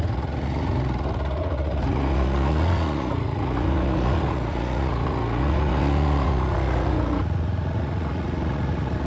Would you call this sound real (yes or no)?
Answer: no